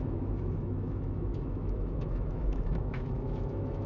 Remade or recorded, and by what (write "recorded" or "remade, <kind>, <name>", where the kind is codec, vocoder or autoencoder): remade, autoencoder, DAC-VAE